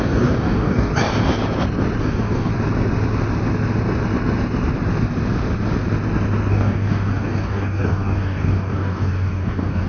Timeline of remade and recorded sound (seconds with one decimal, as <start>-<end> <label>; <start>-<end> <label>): 0.0-0.9 remade; 0.9-2.0 recorded; 2.0-2.5 remade; 2.5-6.5 recorded; 6.5-9.9 remade